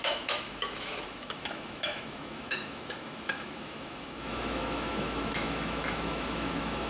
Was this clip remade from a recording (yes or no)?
yes